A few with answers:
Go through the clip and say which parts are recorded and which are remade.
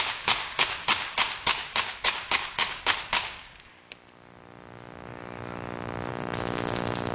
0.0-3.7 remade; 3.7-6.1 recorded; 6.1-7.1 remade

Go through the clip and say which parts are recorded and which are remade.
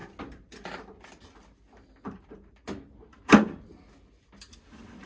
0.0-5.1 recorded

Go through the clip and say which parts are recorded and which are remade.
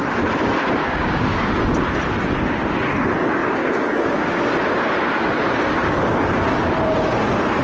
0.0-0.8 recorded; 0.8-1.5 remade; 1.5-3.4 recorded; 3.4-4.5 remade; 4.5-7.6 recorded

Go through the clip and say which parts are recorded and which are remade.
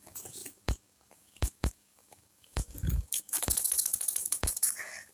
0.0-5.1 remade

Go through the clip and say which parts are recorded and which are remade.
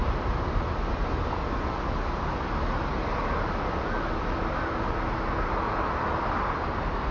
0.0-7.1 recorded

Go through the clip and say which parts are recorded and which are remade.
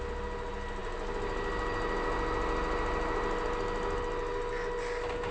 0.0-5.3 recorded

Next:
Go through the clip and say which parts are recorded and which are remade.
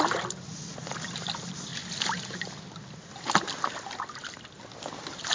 0.0-5.3 recorded